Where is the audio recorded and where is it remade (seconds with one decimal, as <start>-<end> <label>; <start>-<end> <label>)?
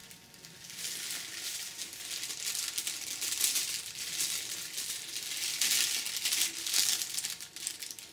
0.0-8.1 recorded